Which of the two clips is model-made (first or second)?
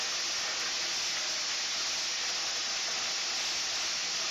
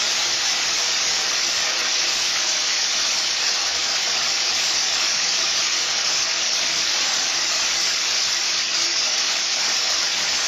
second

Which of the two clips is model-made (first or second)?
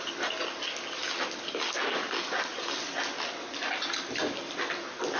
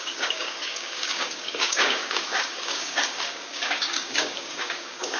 second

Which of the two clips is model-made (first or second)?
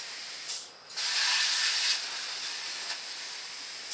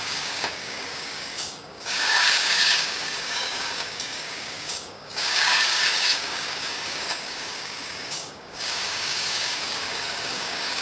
second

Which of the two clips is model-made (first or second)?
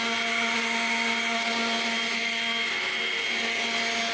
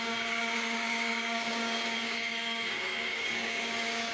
second